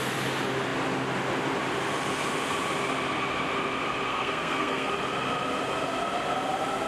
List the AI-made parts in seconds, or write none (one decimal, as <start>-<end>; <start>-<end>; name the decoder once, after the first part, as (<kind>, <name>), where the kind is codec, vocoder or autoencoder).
4.1-4.9 (codec, SNAC)